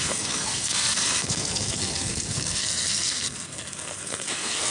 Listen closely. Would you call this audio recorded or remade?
remade